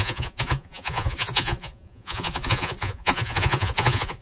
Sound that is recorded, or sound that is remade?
remade